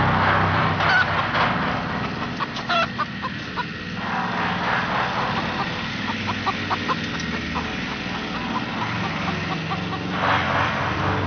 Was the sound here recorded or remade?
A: recorded